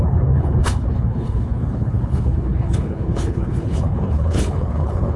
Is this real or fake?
fake